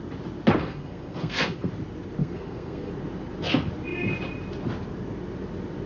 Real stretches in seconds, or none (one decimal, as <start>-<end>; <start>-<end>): 0.0-0.6; 1.7-2.2; 2.9-5.9